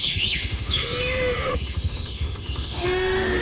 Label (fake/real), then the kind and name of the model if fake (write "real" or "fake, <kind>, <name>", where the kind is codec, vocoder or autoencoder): fake, autoencoder, DAC-VAE